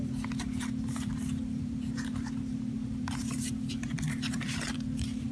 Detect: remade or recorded remade